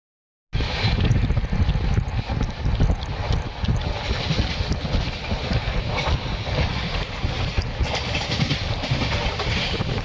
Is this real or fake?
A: real